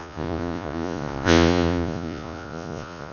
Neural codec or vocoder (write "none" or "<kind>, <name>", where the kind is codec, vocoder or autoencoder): vocoder, Vocos